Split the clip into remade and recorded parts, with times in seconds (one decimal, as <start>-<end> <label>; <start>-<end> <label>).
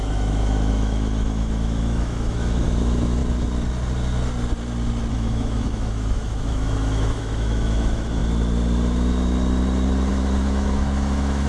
0.0-3.2 remade; 3.2-5.1 recorded; 5.1-8.2 remade; 8.2-10.1 recorded; 10.1-11.5 remade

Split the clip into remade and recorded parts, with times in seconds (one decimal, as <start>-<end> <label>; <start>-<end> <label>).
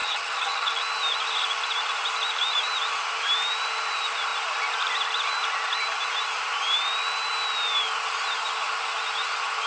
0.0-0.8 remade; 0.8-9.7 recorded